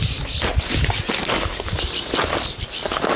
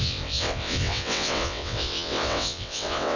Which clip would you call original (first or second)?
first